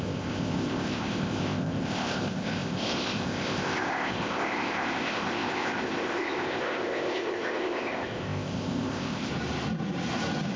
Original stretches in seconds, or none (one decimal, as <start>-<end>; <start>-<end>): 9.3-10.6